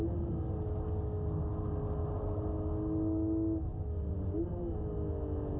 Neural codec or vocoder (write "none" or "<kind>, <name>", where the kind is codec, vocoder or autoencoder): none